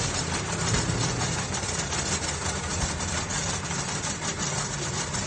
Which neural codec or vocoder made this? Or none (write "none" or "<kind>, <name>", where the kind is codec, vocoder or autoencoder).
none